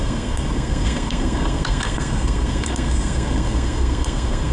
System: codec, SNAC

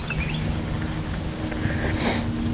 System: none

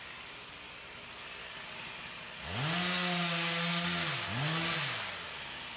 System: none